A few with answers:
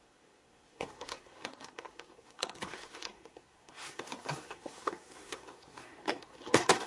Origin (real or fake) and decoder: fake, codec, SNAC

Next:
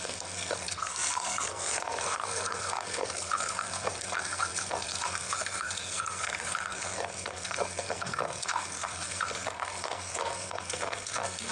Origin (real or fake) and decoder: fake, codec, SNAC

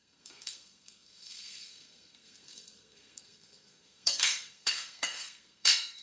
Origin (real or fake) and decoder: fake, codec, SNAC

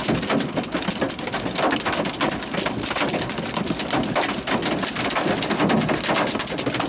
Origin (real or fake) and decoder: real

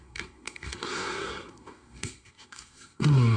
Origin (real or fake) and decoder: fake, codec, SNAC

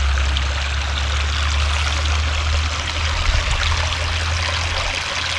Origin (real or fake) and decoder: real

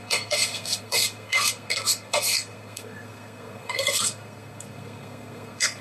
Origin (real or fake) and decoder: fake, codec, SNAC